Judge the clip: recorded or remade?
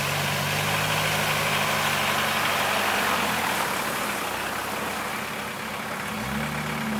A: recorded